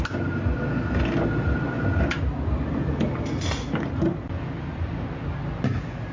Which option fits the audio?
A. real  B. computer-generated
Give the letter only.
A